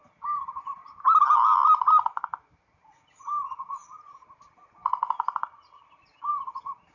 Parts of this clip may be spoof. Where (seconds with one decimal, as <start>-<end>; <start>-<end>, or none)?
none